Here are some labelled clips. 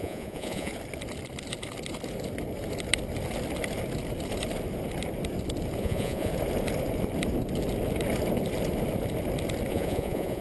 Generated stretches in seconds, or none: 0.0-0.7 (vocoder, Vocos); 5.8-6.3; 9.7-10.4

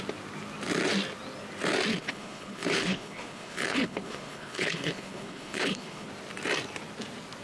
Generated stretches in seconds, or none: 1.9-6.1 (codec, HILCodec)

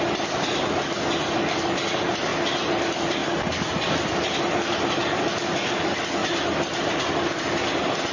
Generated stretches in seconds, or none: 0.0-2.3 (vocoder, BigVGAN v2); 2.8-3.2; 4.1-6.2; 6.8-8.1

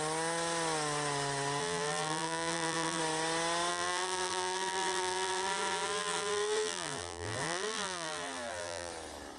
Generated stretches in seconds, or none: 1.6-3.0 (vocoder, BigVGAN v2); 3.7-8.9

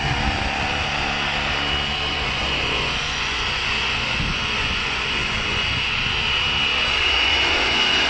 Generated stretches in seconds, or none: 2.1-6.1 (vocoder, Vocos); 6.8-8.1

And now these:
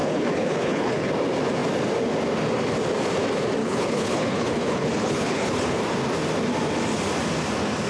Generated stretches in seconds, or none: 0.0-1.1 (codec, HILCodec); 3.6-5.8